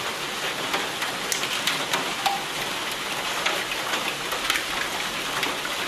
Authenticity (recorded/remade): recorded